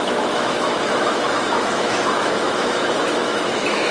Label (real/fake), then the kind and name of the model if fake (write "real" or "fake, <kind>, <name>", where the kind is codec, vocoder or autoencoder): fake, autoencoder, DAC-VAE